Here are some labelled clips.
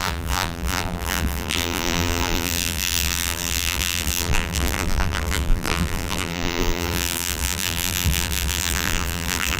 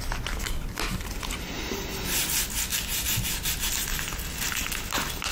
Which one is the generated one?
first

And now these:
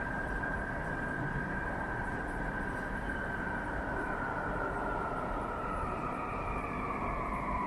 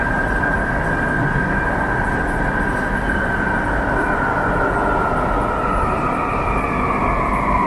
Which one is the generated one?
first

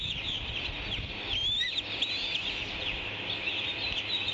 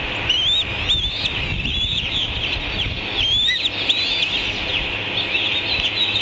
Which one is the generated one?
first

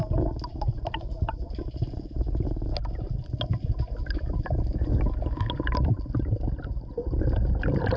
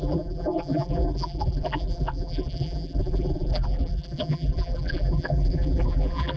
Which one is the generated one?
second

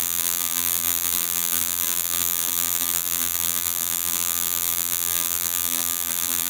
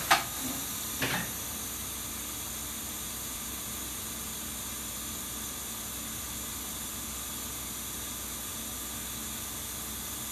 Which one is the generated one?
first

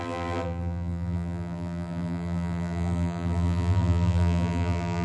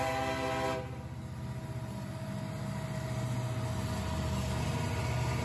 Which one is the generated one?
first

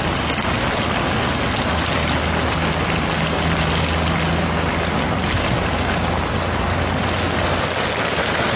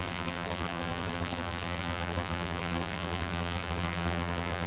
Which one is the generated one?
second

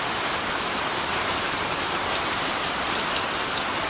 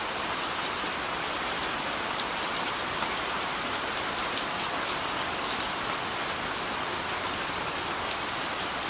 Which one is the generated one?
first